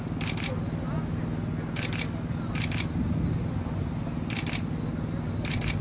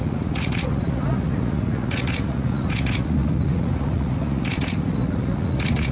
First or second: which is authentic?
first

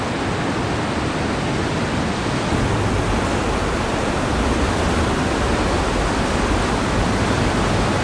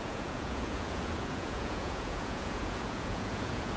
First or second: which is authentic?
first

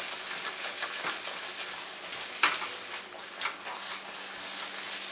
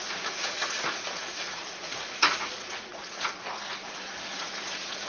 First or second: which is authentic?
first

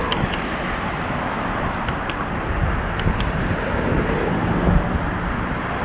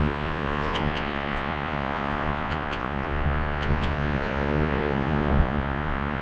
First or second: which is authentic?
first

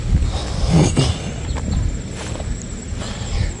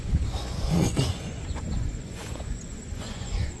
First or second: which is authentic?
first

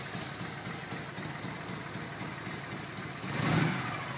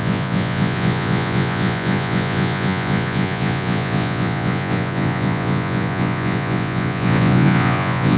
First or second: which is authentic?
first